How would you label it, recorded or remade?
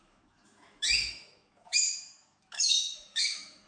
remade